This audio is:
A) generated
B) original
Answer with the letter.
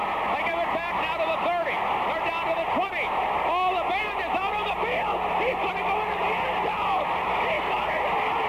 B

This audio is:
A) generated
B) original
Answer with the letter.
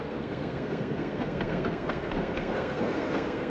A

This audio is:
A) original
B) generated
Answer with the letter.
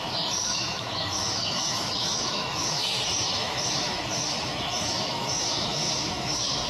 B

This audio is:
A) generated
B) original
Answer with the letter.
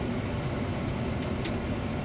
B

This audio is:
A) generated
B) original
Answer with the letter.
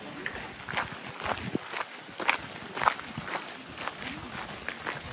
B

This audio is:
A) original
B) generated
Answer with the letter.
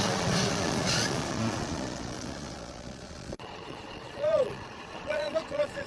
B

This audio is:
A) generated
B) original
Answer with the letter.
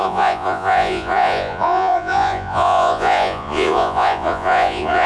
A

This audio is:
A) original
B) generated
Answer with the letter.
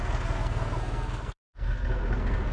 B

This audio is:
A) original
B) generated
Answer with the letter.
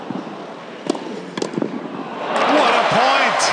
A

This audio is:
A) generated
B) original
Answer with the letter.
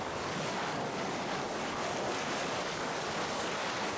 A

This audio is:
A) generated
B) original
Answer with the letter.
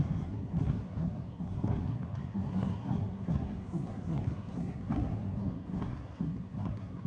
A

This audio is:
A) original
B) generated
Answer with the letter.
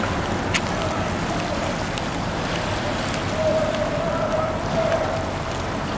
A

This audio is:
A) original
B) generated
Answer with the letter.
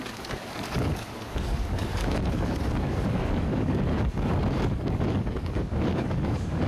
B